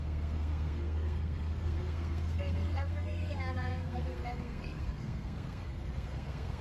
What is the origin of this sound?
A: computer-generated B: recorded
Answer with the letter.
A